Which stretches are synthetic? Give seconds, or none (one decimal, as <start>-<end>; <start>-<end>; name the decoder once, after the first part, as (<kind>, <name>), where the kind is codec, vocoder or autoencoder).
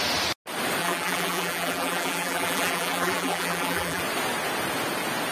0.8-4.0 (vocoder, BigVGAN v2)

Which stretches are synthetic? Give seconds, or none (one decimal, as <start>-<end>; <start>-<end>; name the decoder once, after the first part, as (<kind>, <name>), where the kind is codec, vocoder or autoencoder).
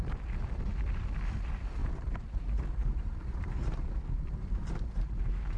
1.8-5.6 (vocoder, BigVGAN v2)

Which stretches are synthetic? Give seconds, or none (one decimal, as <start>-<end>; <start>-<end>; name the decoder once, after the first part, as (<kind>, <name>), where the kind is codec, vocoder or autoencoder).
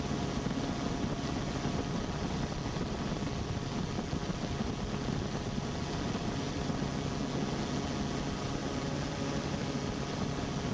0.0-6.9 (vocoder, BigVGAN v2); 8.2-10.7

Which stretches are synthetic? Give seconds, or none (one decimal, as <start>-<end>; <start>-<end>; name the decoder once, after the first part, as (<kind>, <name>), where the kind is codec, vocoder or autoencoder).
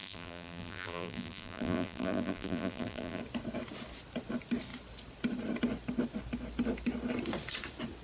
0.0-3.2 (vocoder, BigVGAN v2)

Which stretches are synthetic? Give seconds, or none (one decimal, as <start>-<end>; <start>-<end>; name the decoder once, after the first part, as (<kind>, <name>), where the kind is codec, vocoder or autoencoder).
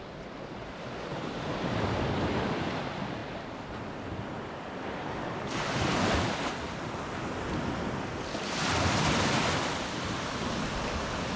1.1-2.0 (vocoder, BigVGAN v2)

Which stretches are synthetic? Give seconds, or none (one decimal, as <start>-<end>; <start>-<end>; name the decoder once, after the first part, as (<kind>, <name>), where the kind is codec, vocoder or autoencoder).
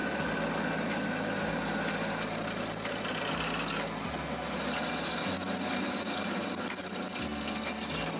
none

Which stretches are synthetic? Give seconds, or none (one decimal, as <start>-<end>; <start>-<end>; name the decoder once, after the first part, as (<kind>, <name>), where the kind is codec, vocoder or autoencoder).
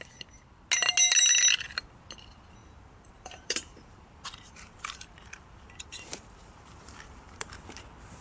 2.6-7.5 (vocoder, BigVGAN v2)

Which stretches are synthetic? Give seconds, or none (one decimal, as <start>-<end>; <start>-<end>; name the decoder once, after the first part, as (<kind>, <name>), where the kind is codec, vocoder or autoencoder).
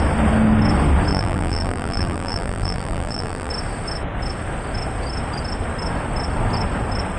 1.1-3.5 (vocoder, BigVGAN v2)